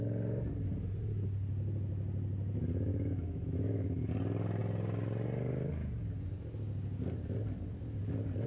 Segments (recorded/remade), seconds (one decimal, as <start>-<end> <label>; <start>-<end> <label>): 0.0-2.9 recorded; 2.9-4.0 remade; 4.0-8.5 recorded